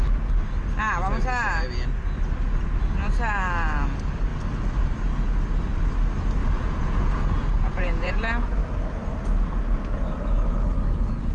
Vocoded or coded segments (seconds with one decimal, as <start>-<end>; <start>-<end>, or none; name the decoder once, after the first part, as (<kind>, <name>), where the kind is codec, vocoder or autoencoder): 6.4-8.1 (vocoder, Vocos)